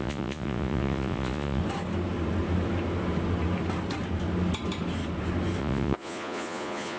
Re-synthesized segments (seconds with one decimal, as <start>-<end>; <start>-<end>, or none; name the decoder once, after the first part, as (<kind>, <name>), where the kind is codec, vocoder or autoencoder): 0.0-1.6 (vocoder, Vocos); 5.6-7.0